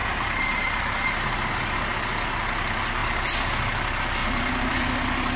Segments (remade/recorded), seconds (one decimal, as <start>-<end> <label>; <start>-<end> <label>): 0.0-4.2 recorded; 4.2-4.7 remade; 4.7-5.4 recorded